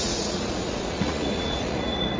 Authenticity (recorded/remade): remade